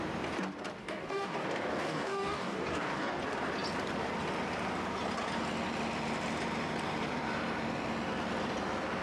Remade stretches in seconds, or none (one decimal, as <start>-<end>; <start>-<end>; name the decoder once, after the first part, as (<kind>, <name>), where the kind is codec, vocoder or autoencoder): 0.8-3.2 (codec, DAC)